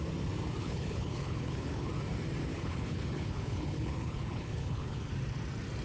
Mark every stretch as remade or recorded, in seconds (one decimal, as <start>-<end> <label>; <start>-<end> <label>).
0.0-0.6 recorded; 0.6-1.9 remade; 1.9-2.5 recorded; 2.5-5.1 remade; 5.1-5.8 recorded